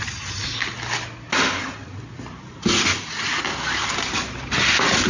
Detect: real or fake real